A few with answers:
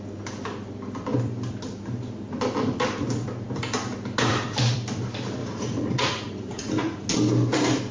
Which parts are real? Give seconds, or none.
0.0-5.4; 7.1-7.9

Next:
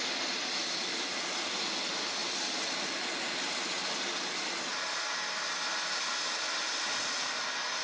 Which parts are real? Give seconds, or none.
0.0-7.8

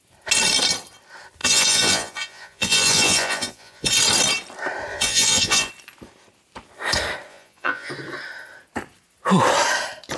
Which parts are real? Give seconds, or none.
0.0-1.4; 3.9-4.9; 5.7-7.3; 7.9-10.2

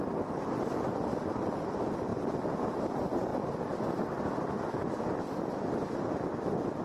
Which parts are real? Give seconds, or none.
0.0-6.8

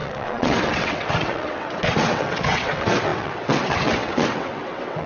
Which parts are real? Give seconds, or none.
none

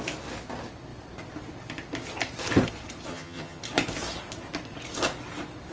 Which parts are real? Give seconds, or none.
0.0-3.1; 3.6-5.7

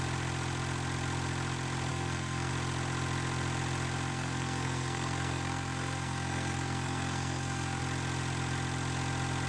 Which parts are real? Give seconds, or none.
0.0-1.9; 2.5-4.1; 7.8-9.5

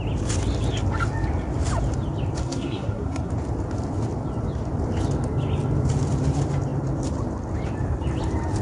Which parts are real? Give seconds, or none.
0.0-2.4; 3.3-8.6